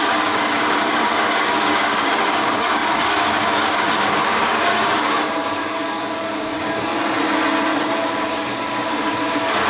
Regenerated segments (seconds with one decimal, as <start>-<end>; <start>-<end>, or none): 0.0-6.9; 8.0-9.7